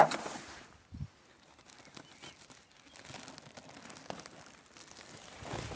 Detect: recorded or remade recorded